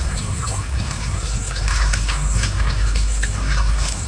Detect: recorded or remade remade